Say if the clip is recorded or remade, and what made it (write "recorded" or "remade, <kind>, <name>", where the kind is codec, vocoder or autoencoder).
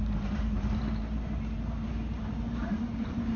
remade, vocoder, BigVGAN v2